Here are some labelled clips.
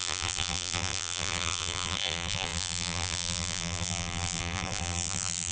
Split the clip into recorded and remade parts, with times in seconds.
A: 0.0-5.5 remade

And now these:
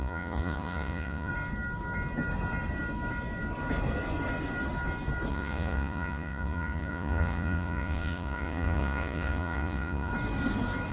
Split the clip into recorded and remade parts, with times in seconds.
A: 0.0-1.3 remade; 1.3-5.3 recorded; 5.3-10.1 remade; 10.1-10.9 recorded

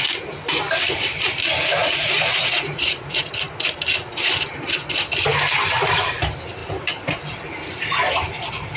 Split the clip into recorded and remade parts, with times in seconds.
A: 0.0-1.8 recorded; 1.8-3.3 remade; 3.3-8.8 recorded

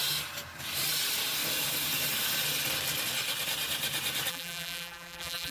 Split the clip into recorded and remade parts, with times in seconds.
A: 0.0-4.3 recorded; 4.3-5.5 remade